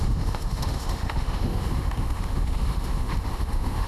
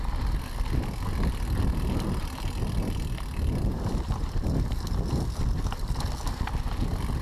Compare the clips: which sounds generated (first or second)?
first